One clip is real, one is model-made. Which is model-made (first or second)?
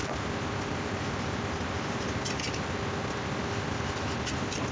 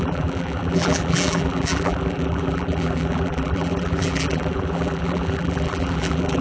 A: second